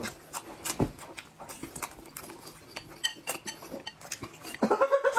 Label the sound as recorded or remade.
recorded